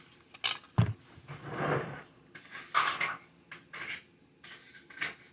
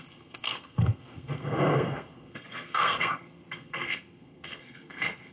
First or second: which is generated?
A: second